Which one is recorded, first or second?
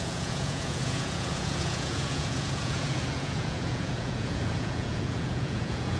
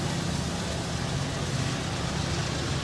second